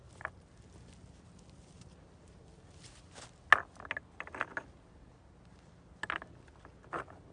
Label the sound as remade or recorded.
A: recorded